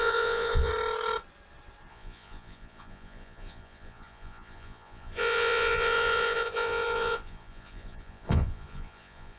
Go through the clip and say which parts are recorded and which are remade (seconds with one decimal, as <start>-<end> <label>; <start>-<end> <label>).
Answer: 0.0-0.7 remade; 0.7-1.9 recorded; 1.9-9.4 remade